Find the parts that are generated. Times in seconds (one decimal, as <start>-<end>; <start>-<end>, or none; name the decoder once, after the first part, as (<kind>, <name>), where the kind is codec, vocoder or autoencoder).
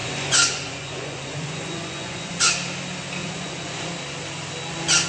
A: 0.0-2.4 (vocoder, Vocos); 3.2-3.9